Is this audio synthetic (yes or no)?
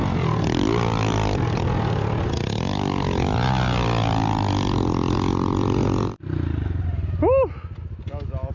no